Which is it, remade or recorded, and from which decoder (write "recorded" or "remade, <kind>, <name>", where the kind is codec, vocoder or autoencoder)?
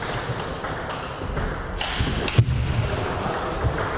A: recorded